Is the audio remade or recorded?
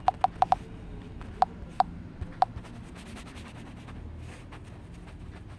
recorded